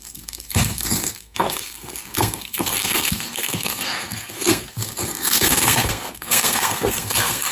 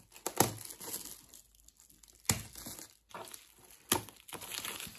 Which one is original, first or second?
second